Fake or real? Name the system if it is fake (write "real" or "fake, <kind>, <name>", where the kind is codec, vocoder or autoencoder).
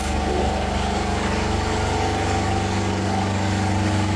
fake, codec, DAC